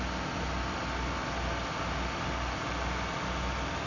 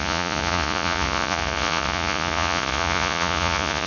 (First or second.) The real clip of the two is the first